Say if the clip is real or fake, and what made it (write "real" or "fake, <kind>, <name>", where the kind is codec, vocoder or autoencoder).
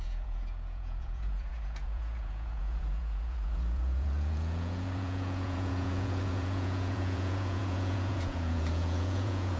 fake, vocoder, Vocos